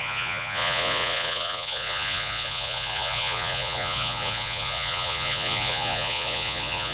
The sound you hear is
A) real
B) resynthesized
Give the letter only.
B